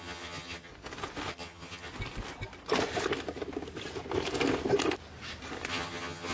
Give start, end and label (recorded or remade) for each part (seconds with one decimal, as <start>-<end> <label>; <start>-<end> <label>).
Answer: 0.0-0.7 remade; 0.7-1.3 recorded; 1.3-1.9 remade; 1.9-5.7 recorded; 5.7-6.3 remade